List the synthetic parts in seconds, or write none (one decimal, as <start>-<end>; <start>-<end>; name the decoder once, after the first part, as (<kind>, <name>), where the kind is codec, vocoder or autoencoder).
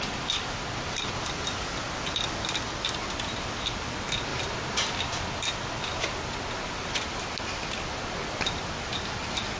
none